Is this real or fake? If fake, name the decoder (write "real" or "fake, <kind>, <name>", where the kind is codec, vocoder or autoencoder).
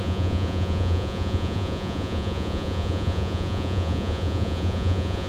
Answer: fake, vocoder, Vocos